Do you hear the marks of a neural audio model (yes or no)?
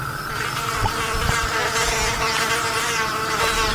no